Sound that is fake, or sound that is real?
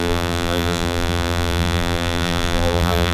fake